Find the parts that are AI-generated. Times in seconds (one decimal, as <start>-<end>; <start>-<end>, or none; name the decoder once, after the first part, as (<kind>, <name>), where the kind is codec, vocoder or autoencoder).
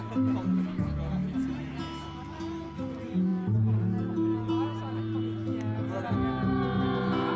1.2-1.7 (vocoder, BigVGAN v2)